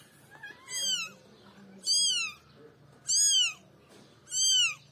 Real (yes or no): yes